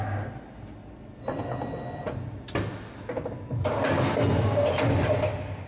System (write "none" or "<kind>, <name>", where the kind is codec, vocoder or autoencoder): none